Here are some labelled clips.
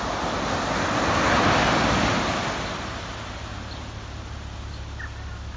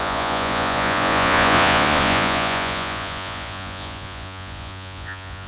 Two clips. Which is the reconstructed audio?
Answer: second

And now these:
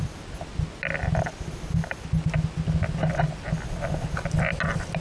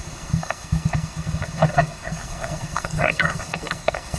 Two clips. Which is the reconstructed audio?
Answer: second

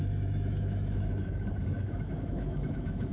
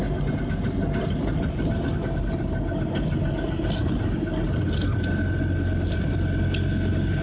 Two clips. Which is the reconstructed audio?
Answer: first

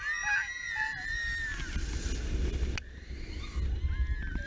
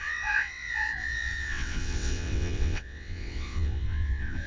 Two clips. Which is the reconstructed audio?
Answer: second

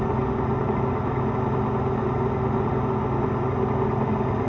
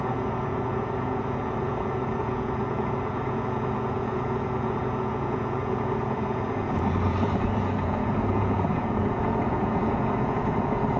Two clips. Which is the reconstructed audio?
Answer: second